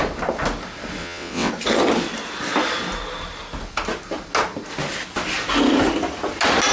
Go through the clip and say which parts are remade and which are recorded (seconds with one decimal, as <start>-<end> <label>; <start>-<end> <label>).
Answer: 0.0-1.0 recorded; 1.0-1.5 remade; 1.5-6.7 recorded